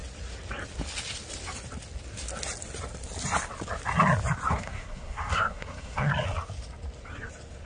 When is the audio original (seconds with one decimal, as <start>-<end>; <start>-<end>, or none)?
0.0-4.5; 6.1-7.7